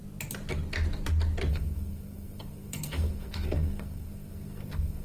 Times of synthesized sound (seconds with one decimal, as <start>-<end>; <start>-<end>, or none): 1.5-5.0